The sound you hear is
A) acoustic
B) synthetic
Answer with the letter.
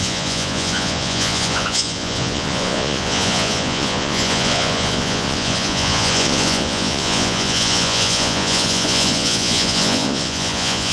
B